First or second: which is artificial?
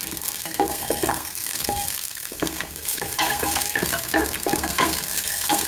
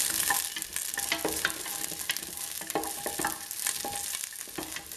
first